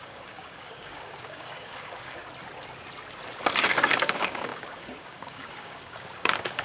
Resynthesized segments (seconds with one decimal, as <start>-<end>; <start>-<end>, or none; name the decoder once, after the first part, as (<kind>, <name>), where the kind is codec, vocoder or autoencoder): 0.0-2.2 (codec, DAC); 3.9-6.6